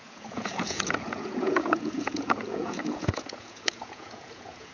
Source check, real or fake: fake